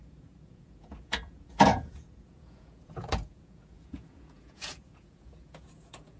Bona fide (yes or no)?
no